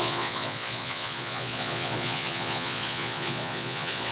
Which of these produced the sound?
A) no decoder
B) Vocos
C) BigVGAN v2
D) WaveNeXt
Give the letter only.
B